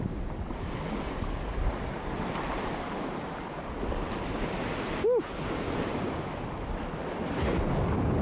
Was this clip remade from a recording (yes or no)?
no